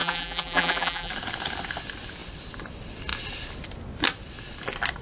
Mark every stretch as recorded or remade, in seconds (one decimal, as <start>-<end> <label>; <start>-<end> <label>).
0.0-1.1 remade; 1.1-5.0 recorded